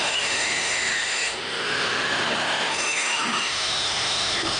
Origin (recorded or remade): remade